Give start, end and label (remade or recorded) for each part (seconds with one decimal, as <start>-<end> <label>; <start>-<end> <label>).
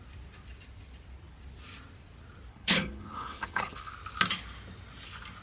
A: 0.0-2.5 recorded; 2.5-3.9 remade; 3.9-5.4 recorded